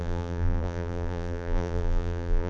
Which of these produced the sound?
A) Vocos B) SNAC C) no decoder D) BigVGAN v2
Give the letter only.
D